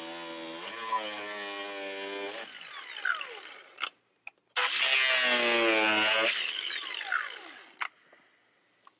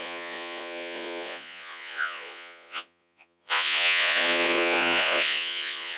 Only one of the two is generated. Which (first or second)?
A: second